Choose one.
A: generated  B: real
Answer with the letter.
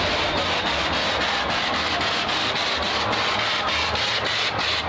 B